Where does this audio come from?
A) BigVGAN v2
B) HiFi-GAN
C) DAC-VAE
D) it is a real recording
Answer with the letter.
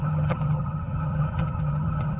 B